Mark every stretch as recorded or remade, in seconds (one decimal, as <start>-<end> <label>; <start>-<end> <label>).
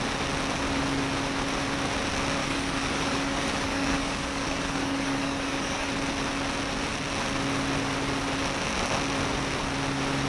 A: 0.0-2.4 recorded; 2.4-5.9 remade; 5.9-10.3 recorded